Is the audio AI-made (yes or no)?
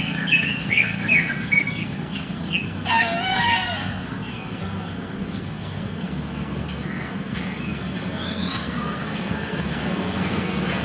yes